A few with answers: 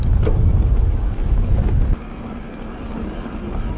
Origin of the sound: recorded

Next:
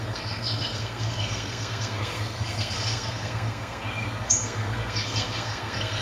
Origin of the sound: remade